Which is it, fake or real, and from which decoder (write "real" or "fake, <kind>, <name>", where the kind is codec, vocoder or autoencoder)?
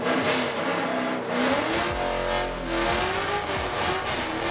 real